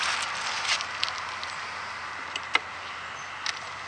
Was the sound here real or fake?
real